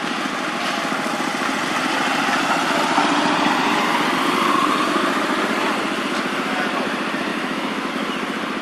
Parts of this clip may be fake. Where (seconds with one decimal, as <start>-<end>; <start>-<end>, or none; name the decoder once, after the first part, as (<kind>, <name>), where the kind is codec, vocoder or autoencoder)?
7.3-7.9 (autoencoder, DAC-VAE)